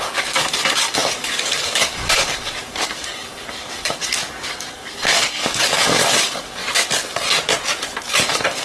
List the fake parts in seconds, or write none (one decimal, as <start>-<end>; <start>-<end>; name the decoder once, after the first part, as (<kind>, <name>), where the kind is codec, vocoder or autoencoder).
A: 0.0-6.6 (codec, DAC); 8.2-8.6